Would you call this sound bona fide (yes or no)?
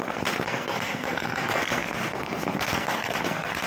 no